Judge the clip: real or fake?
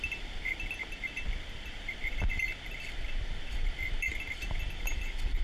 real